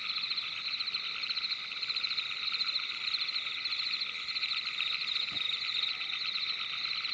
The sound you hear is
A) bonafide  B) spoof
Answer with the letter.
A